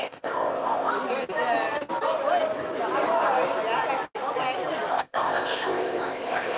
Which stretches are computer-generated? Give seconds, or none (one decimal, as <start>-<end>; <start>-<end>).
0.0-0.9; 4.9-6.6